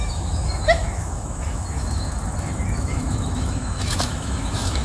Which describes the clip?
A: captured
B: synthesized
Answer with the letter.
B